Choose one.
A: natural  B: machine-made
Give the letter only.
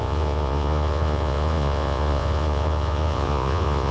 B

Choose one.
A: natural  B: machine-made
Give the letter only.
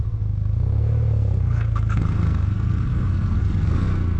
B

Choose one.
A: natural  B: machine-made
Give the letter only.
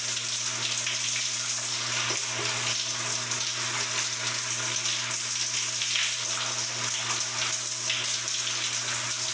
A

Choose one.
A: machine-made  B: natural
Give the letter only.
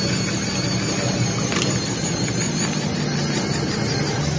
B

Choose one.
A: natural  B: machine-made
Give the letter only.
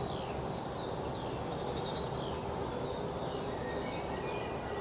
A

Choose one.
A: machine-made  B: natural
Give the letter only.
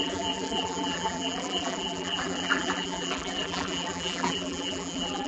A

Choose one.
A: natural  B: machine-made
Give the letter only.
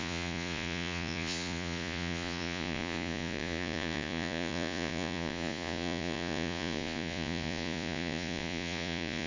B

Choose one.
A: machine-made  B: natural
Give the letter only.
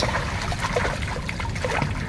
B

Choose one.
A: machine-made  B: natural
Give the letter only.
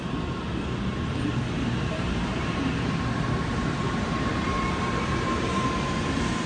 A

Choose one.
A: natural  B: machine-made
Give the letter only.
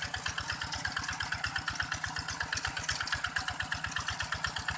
A